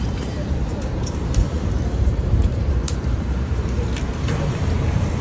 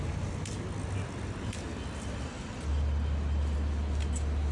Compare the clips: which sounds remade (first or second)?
first